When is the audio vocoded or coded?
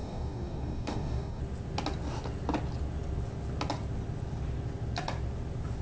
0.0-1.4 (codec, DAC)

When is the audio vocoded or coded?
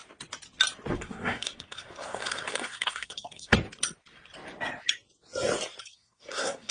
0.9-3.5 (codec, SNAC); 5.8-6.7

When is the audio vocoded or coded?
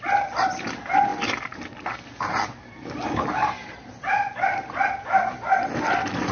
none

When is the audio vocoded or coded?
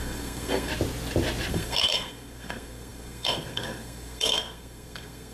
0.0-0.7 (codec, SNAC); 1.5-5.3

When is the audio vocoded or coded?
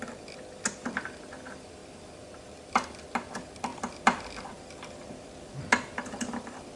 none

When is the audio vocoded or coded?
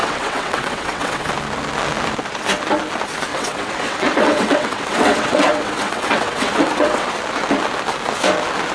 0.0-1.3 (vocoder, WaveNeXt); 3.3-7.1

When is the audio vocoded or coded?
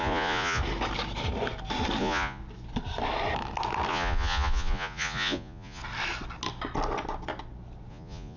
0.0-0.6 (vocoder, Vocos); 2.0-2.4; 3.9-5.8; 7.9-8.4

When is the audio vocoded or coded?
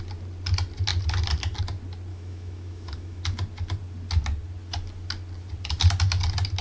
2.1-3.2 (autoencoder, DAC-VAE)